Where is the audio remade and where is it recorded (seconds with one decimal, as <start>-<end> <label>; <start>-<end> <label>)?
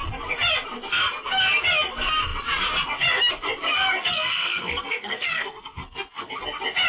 0.0-4.1 recorded; 4.1-6.4 remade; 6.4-6.9 recorded